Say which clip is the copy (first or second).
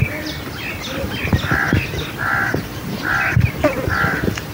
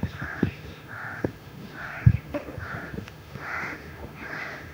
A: second